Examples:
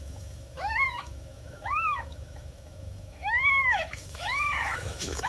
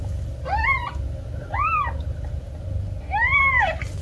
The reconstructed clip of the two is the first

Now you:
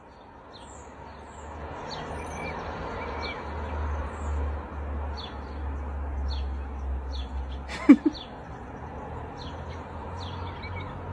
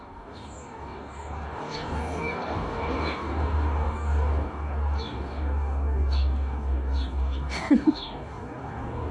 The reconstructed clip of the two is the second